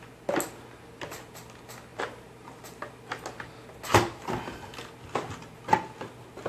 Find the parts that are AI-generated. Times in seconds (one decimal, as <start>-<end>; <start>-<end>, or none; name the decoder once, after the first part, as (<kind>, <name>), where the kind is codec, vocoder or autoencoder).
1.9-2.9 (vocoder, BigVGAN v2)